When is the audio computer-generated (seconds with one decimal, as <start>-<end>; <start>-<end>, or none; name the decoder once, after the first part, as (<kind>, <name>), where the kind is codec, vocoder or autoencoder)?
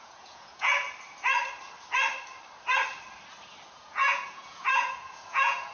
0.0-0.8 (vocoder, Vocos); 3.7-5.7